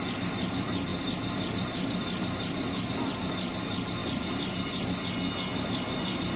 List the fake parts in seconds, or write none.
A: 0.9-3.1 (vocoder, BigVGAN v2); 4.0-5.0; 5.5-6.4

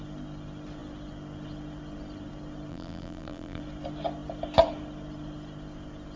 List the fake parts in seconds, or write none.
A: 2.7-3.6 (vocoder, BigVGAN v2)

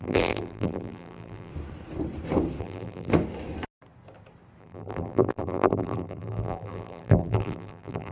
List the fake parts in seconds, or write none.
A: 0.0-1.5 (vocoder, BigVGAN v2); 2.6-3.1; 4.6-8.1

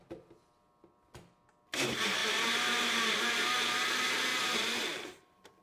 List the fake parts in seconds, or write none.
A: 2.2-3.2 (vocoder, BigVGAN v2); 4.3-5.6

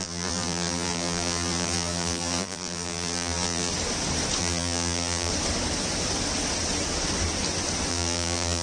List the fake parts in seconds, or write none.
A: 0.0-3.7 (vocoder, BigVGAN v2); 4.4-5.3; 7.9-8.6

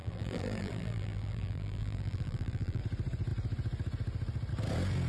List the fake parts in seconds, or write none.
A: 0.0-2.8 (vocoder, BigVGAN v2)

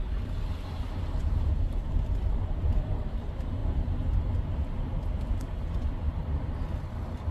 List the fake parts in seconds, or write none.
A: 1.2-3.1 (vocoder, BigVGAN v2)

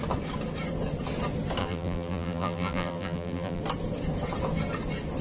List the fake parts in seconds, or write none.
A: 1.6-3.6 (vocoder, BigVGAN v2)